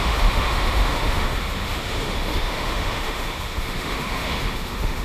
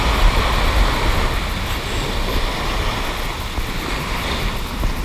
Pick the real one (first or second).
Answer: second